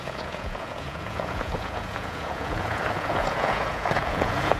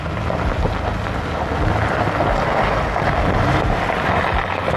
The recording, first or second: second